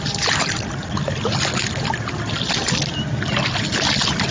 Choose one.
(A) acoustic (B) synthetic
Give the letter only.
A